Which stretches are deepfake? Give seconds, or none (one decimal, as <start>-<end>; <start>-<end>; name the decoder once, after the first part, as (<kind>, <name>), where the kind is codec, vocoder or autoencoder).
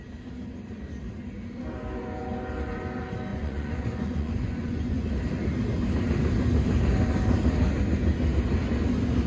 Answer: 3.3-5.1 (vocoder, Vocos)